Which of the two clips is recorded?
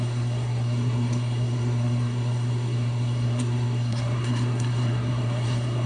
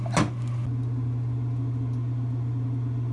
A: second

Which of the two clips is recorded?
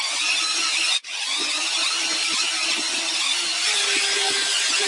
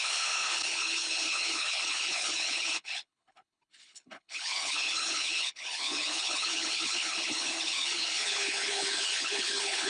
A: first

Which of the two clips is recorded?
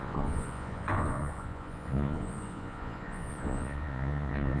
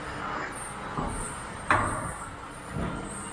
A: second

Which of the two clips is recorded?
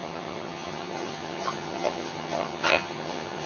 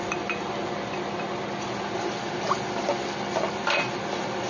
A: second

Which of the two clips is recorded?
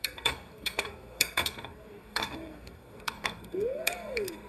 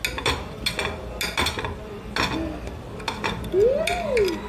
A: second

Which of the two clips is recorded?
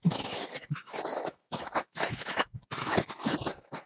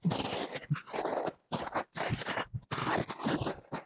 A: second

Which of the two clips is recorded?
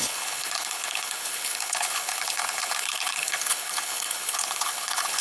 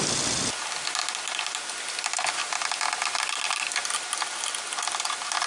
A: second